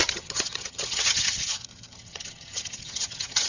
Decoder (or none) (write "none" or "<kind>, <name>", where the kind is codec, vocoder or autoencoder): vocoder, HiFi-GAN